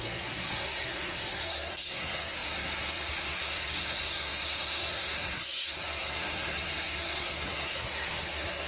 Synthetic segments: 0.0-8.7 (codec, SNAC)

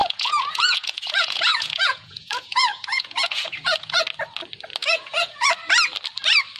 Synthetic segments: 0.0-4.0 (vocoder, Vocos); 4.8-5.5